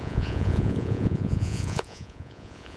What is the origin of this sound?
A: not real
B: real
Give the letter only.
A